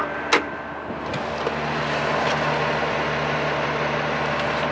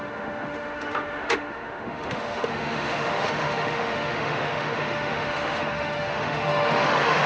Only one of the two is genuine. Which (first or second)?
first